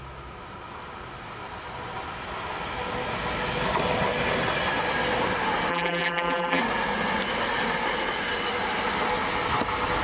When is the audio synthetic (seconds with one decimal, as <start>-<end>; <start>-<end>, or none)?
5.7-6.6